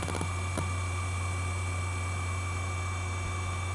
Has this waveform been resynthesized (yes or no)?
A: no